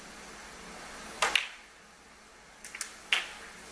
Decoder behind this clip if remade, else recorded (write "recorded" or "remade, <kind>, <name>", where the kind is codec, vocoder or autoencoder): recorded